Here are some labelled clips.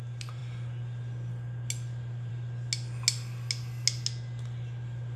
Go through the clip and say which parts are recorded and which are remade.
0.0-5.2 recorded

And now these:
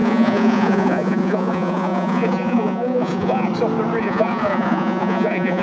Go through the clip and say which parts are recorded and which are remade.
0.0-3.5 remade; 3.5-4.0 recorded; 4.0-5.6 remade

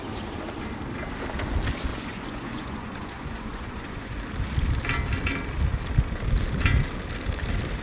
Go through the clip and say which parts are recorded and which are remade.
0.0-1.9 recorded; 1.9-4.2 remade; 4.2-7.8 recorded

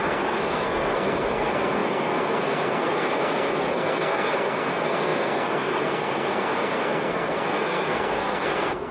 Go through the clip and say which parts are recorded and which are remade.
0.0-8.9 remade

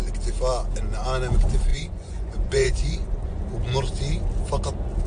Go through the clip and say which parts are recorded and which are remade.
0.0-1.7 recorded; 1.7-3.4 remade; 3.4-5.1 recorded

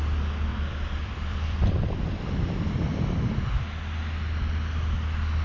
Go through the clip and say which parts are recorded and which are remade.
0.0-0.5 recorded; 0.5-2.7 remade; 2.7-5.4 recorded